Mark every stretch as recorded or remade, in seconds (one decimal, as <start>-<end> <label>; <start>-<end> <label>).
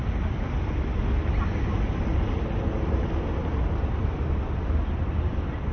0.0-5.7 recorded